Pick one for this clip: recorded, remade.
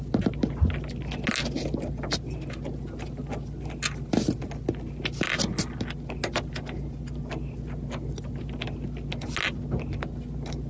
recorded